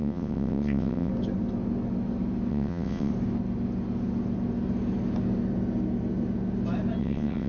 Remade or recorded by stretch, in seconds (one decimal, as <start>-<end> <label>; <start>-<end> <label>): 0.0-1.1 remade; 1.1-2.5 recorded; 2.5-3.1 remade; 3.1-7.0 recorded; 7.0-7.5 remade